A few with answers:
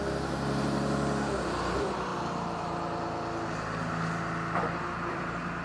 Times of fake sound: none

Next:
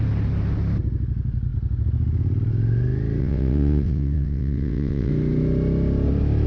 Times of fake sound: 3.2-5.1 (vocoder, WaveNeXt)

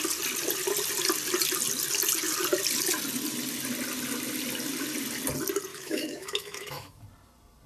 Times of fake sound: 5.7-7.0 (autoencoder, DAC-VAE)